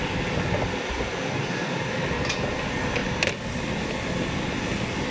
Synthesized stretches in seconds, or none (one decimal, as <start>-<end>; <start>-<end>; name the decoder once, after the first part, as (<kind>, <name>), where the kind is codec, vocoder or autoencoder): none